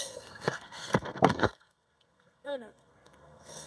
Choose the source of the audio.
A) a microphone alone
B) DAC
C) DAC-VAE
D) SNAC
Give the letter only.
D